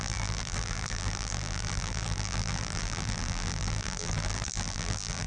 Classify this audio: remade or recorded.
remade